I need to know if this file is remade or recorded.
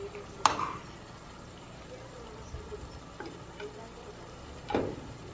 recorded